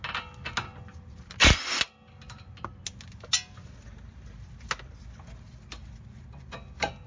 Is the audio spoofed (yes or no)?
no